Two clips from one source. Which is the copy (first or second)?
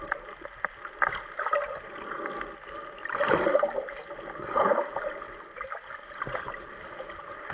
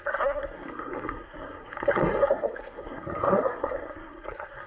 second